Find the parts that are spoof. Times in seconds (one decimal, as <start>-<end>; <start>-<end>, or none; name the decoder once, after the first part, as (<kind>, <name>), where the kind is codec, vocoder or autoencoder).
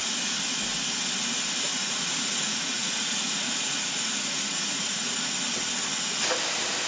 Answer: 1.7-5.3 (vocoder, Vocos)